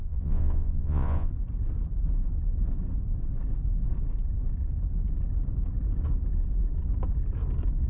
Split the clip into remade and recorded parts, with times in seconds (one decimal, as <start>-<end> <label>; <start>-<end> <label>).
0.0-1.3 remade; 1.3-7.9 recorded